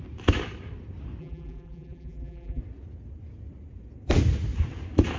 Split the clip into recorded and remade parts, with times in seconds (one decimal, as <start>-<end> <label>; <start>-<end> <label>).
0.0-1.2 recorded; 1.2-2.6 remade; 2.6-5.2 recorded